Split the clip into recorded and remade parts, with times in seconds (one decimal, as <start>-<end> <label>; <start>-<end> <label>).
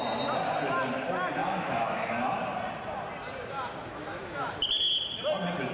0.0-1.4 recorded; 1.4-2.4 remade; 2.4-3.9 recorded; 3.9-4.5 remade; 4.5-5.7 recorded